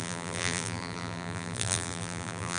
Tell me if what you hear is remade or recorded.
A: remade